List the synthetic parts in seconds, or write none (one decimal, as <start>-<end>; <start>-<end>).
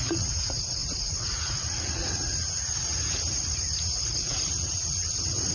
0.0-5.5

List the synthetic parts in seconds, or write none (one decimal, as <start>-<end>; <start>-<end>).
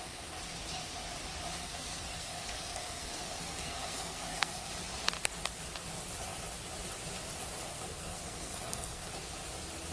1.6-4.7; 7.7-9.1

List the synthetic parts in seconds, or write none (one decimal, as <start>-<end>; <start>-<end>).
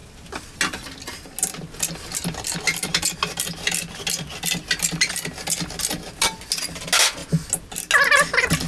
none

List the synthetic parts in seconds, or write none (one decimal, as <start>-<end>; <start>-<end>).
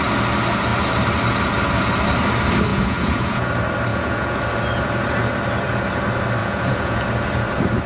2.7-3.5; 3.9-4.4; 6.4-7.0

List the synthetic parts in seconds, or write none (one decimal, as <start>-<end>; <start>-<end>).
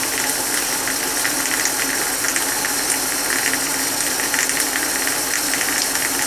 none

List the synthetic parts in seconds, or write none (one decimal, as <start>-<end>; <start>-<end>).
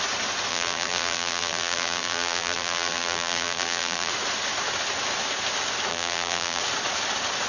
0.5-4.1; 5.9-6.6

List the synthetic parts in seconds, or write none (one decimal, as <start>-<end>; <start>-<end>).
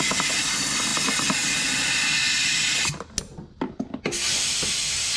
none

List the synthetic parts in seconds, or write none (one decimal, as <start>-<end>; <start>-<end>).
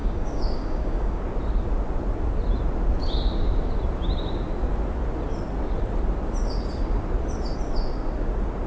0.0-1.2